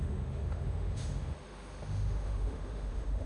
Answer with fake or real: fake